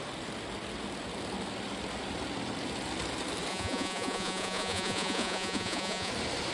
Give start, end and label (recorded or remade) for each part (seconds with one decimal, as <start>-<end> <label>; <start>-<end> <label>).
0.0-3.5 recorded; 3.5-6.1 remade; 6.1-6.5 recorded